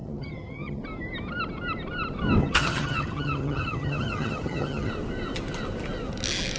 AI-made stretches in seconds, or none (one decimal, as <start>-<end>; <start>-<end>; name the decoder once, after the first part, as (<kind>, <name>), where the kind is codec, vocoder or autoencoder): 0.0-0.8 (vocoder, HiFi-GAN); 2.4-4.9